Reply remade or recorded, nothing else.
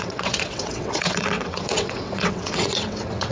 remade